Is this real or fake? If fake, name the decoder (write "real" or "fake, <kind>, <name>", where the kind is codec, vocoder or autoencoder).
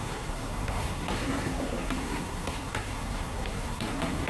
fake, codec, SNAC